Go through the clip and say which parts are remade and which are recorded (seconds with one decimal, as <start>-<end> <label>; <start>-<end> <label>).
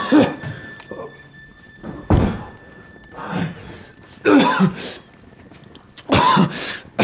0.0-7.0 recorded